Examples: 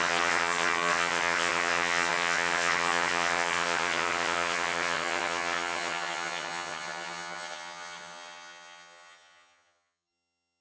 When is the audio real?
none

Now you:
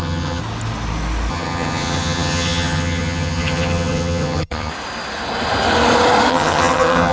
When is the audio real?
0.4-1.3; 4.7-6.3

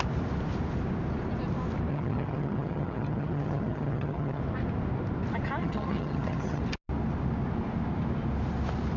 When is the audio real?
0.0-1.9; 4.4-5.6; 6.6-9.0